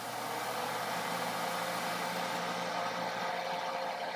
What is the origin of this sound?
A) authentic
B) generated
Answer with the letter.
A